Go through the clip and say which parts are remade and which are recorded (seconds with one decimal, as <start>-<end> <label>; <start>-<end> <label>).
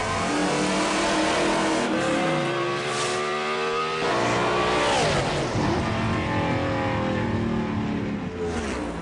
0.0-9.0 recorded